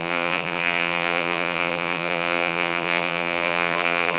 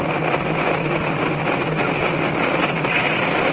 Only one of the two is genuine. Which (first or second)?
second